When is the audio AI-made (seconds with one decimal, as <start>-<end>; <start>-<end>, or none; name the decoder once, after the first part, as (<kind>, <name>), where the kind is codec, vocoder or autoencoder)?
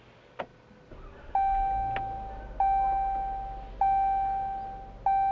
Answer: none